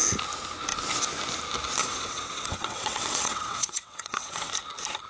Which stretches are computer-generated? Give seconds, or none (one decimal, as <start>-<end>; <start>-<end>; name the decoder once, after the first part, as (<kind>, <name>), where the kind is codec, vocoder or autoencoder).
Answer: 1.8-4.5 (vocoder, WaveNeXt)